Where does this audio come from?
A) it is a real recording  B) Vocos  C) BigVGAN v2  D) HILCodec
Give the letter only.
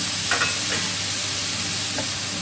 A